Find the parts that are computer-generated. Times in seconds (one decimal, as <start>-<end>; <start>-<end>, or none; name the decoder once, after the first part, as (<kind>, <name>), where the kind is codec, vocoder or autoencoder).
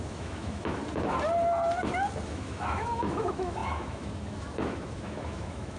0.0-0.8 (autoencoder, DAC-VAE); 2.3-5.8